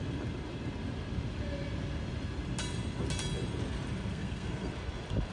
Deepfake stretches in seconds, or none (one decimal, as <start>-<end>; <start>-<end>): 4.1-4.7